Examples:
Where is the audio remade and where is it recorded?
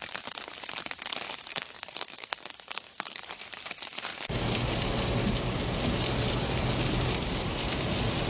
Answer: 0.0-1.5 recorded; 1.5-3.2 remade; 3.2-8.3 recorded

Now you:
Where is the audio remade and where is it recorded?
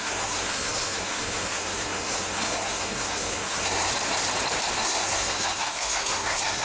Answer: 0.0-3.9 remade; 3.9-4.8 recorded; 4.8-6.6 remade